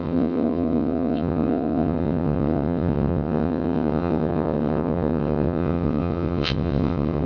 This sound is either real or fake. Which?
fake